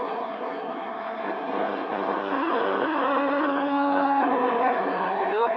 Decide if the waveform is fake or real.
fake